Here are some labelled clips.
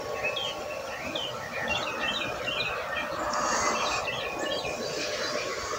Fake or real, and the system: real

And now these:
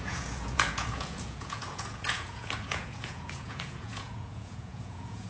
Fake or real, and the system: fake, vocoder, Vocos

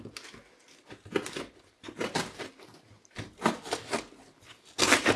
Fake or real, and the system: real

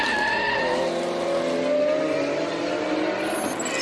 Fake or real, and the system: real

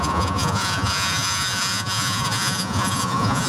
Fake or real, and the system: fake, vocoder, Vocos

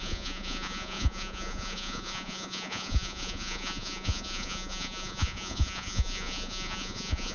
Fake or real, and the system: fake, vocoder, Vocos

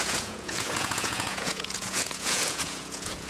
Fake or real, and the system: fake, vocoder, Vocos